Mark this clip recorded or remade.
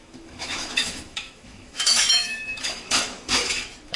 remade